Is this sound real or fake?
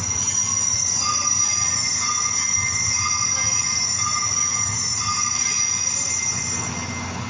real